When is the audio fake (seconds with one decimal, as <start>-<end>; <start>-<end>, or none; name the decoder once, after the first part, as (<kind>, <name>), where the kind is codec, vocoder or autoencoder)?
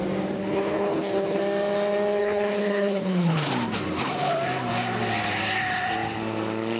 0.4-1.4 (codec, HILCodec); 2.2-3.5